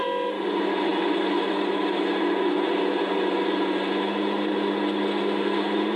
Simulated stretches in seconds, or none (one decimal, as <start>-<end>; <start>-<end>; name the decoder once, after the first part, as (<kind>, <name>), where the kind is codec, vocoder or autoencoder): none